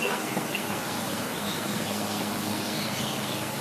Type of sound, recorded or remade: remade